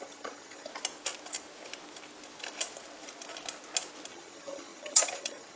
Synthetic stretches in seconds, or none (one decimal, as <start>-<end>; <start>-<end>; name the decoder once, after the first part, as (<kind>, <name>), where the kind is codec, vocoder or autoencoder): 0.0-0.7 (vocoder, HiFi-GAN); 4.1-5.6